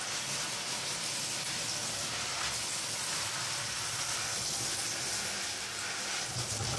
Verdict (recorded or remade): recorded